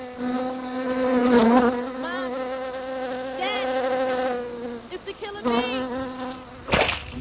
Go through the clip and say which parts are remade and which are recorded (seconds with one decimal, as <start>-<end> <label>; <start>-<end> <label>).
0.0-7.2 recorded